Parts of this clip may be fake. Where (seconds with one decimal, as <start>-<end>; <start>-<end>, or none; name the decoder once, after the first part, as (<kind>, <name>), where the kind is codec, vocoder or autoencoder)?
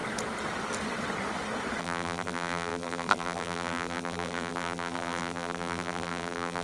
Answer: 1.8-6.6 (vocoder, BigVGAN v2)